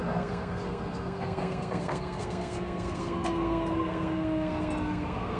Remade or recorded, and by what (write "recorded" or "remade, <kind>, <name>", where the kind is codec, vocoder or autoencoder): remade, codec, SNAC